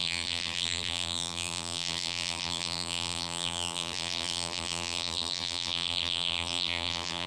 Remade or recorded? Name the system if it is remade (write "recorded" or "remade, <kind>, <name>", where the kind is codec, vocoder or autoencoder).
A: remade, vocoder, BigVGAN v2